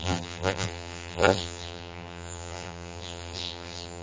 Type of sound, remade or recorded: remade